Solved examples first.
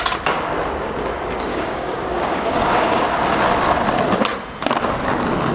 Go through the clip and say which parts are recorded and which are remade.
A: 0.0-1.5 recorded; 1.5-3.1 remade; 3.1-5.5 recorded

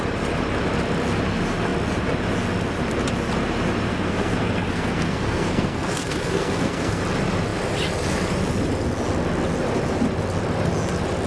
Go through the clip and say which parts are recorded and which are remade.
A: 0.0-3.9 recorded; 3.9-7.0 remade; 7.0-11.3 recorded

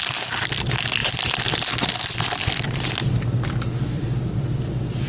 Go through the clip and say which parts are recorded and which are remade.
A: 0.0-5.1 recorded

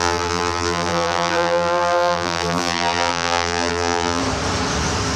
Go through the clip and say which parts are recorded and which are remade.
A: 0.0-4.2 remade; 4.2-5.2 recorded